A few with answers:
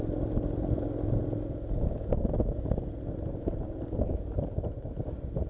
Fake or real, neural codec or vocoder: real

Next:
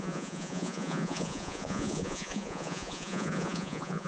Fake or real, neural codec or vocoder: fake, vocoder, Vocos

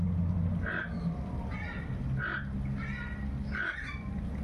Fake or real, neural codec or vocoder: real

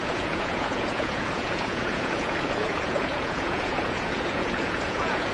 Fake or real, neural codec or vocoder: fake, vocoder, Vocos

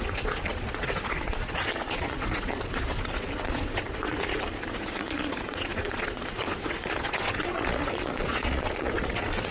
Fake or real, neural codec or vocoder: fake, vocoder, Vocos